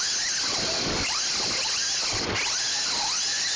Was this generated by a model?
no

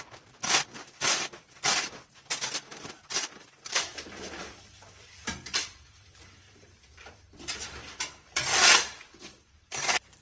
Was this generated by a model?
yes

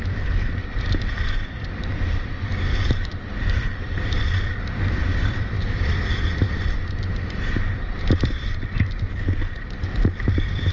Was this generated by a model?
yes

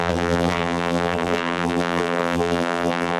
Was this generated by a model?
yes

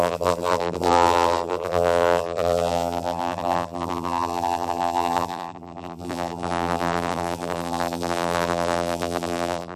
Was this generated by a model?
yes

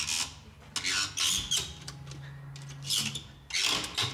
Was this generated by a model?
no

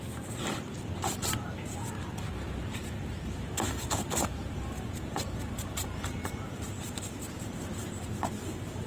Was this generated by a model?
yes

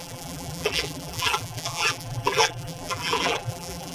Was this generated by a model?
yes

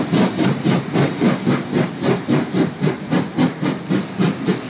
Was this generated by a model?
no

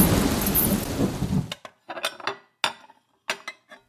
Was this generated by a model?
no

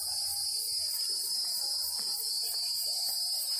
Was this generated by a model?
no